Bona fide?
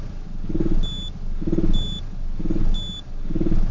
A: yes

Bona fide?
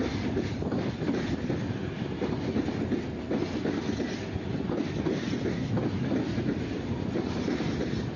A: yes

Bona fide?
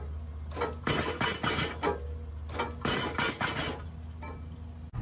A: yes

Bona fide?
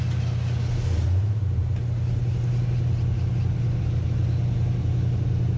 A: yes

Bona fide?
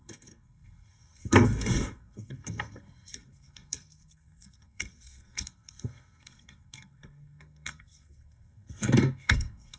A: no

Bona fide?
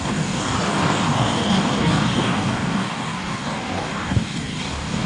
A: no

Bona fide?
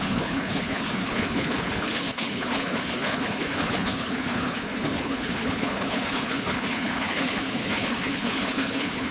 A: no